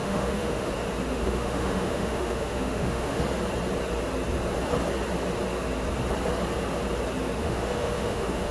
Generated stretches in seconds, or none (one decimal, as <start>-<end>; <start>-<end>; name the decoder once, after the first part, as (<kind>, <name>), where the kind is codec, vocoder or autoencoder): 0.0-0.7 (autoencoder, DAC-VAE); 1.1-3.2; 7.4-8.5